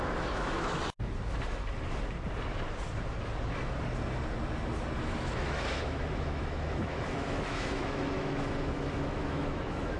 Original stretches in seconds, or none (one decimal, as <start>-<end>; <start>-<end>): 0.8-5.0